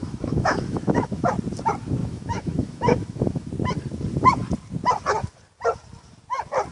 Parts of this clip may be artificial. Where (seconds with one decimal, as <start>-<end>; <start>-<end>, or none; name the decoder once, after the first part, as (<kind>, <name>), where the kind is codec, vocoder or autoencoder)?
0.0-1.3 (autoencoder, DAC-VAE); 2.0-3.5